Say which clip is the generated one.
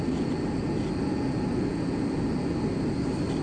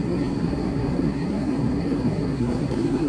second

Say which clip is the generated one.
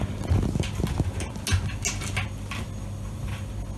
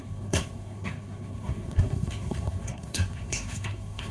second